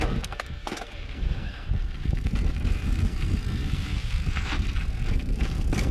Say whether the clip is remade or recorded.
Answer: remade